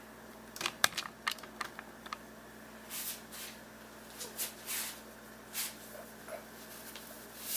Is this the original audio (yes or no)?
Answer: yes